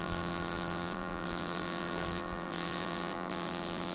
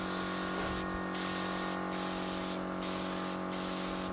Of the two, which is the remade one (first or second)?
first